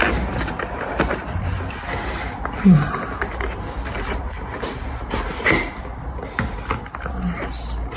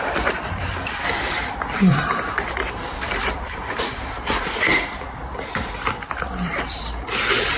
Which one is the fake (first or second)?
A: second